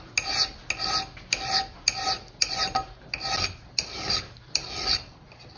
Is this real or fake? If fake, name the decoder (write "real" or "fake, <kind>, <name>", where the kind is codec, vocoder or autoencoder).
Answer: real